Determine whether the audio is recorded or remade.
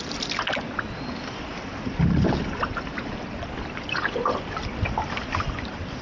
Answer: recorded